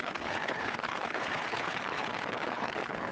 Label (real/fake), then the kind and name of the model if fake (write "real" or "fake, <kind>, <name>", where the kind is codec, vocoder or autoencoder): fake, codec, HILCodec